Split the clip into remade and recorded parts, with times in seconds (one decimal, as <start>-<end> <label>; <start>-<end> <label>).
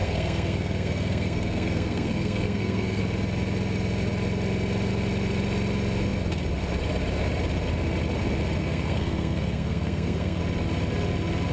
0.0-3.0 remade; 3.0-8.6 recorded; 8.6-10.4 remade; 10.4-11.5 recorded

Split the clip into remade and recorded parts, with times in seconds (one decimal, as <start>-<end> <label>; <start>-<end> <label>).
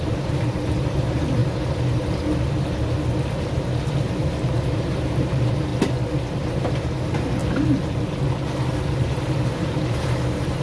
0.0-1.4 remade; 1.4-4.2 recorded; 4.2-5.7 remade; 5.7-6.3 recorded; 6.3-7.4 remade; 7.4-9.0 recorded; 9.0-10.6 remade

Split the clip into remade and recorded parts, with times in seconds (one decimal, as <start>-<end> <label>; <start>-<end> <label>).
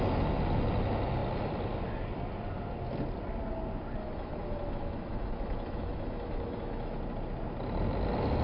0.0-4.0 recorded; 4.0-7.0 remade; 7.0-8.4 recorded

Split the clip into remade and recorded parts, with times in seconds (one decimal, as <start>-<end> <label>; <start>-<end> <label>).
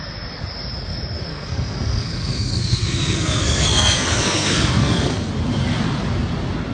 0.0-1.3 recorded; 1.3-5.3 remade; 5.3-6.7 recorded